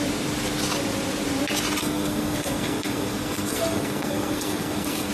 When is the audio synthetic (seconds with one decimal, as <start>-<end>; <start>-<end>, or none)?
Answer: 1.8-5.1